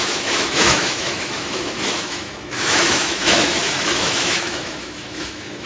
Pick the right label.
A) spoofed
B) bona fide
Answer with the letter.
A